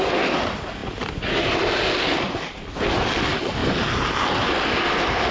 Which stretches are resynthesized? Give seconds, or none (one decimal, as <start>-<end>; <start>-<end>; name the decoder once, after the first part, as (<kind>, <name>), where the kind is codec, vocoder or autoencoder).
none